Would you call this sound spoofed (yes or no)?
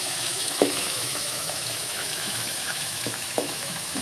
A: yes